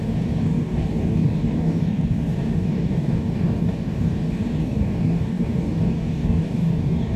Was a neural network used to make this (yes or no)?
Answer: yes